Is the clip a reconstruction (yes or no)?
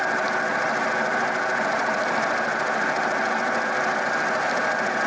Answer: no